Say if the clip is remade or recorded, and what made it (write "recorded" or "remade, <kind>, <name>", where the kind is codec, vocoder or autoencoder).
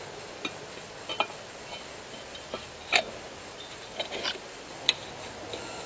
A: recorded